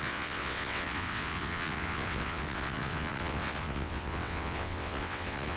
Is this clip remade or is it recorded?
remade